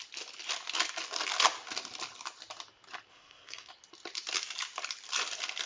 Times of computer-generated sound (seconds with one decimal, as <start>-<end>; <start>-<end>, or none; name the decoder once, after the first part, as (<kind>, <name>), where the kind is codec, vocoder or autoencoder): 3.1-3.7 (codec, SNAC)

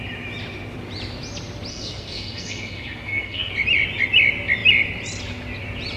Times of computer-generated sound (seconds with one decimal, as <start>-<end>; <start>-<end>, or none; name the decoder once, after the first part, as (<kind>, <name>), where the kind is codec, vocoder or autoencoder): 1.7-3.5 (codec, SNAC)

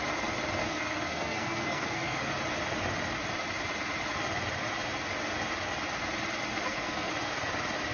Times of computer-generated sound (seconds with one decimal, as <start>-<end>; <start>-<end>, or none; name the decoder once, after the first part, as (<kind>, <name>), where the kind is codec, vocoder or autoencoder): 0.6-2.3 (codec, SNAC); 6.5-7.1

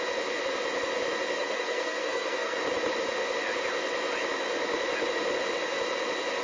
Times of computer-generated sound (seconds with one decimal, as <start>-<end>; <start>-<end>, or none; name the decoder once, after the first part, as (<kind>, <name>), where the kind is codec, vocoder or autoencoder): 1.4-2.6 (codec, SNAC)

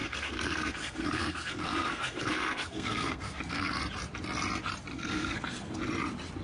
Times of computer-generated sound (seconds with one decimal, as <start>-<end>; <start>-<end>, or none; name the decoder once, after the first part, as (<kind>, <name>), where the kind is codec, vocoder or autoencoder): 0.0-3.8 (codec, SNAC); 4.9-5.8